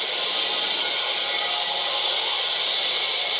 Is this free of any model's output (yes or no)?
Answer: yes